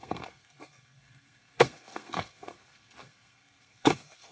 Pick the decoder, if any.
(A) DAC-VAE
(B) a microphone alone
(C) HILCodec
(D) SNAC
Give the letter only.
D